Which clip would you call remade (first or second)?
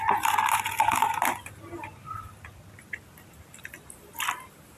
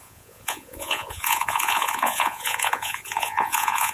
second